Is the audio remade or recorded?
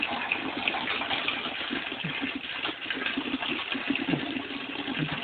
recorded